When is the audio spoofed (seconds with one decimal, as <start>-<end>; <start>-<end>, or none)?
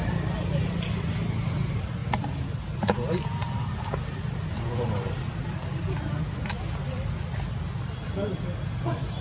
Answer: none